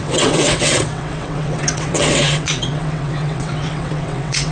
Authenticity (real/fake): fake